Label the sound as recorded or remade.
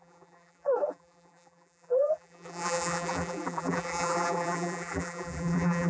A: remade